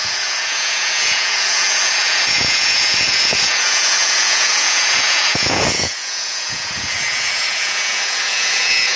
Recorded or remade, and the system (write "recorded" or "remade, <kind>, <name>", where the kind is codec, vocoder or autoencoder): remade, vocoder, Vocos